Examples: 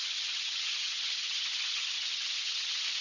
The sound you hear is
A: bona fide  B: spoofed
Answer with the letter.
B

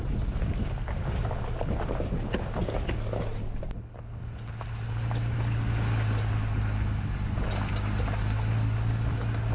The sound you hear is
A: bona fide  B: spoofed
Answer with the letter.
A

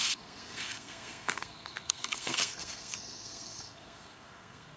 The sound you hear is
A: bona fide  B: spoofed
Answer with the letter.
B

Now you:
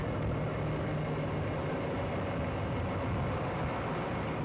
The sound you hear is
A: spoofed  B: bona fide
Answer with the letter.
B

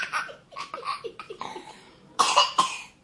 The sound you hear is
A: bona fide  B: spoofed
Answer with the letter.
B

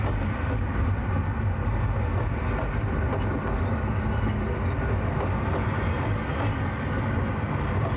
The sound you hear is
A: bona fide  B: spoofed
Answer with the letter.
A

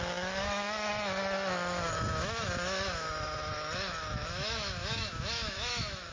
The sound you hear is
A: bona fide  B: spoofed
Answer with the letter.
B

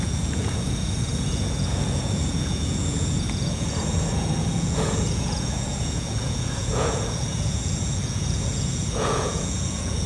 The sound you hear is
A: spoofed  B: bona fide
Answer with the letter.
A